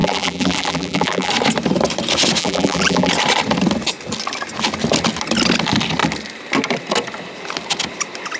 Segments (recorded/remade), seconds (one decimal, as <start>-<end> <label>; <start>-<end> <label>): 0.0-1.3 remade; 1.3-2.4 recorded; 2.4-3.1 remade; 3.1-8.4 recorded